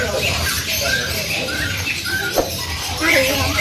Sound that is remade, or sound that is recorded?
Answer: recorded